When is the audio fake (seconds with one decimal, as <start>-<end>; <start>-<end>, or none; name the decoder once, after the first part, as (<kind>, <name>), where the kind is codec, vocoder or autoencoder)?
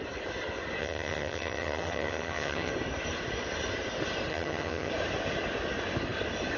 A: 0.8-2.7 (vocoder, HiFi-GAN); 4.3-4.9